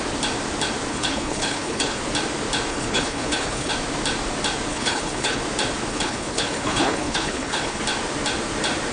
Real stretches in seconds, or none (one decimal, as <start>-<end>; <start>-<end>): 0.0-0.9; 2.0-2.7; 3.7-4.7; 5.4-5.9; 7.8-8.9